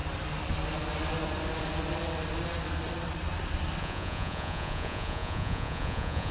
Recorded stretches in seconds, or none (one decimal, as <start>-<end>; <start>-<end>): 0.0-3.8